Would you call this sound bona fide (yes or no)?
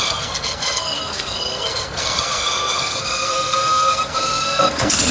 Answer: no